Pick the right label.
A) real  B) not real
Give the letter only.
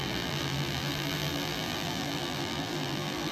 B